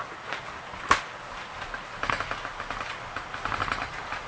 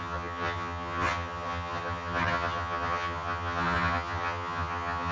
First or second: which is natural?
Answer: first